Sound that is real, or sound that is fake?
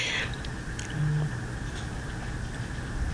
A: real